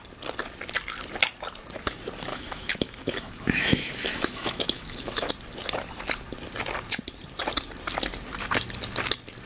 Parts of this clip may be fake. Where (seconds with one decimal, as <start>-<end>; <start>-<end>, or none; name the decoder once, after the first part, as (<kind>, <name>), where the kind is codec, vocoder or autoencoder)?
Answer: 2.3-5.3 (autoencoder, DAC-VAE)